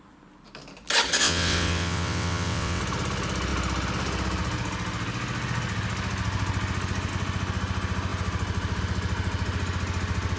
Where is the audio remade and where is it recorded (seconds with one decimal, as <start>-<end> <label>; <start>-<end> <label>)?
0.0-1.2 recorded; 1.2-2.8 remade; 2.8-10.4 recorded